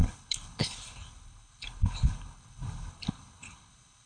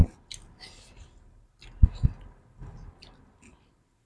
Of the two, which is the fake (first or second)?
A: first